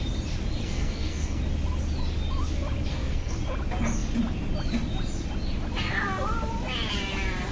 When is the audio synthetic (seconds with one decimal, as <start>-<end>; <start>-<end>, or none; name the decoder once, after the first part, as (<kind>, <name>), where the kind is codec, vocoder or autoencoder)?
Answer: 0.6-1.4 (codec, SNAC); 2.9-3.4